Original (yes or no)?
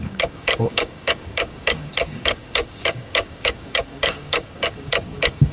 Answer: no